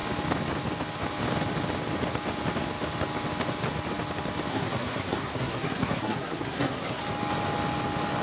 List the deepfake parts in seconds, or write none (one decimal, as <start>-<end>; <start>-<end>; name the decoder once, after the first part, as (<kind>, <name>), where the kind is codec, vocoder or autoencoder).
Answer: 4.5-7.0 (codec, SNAC)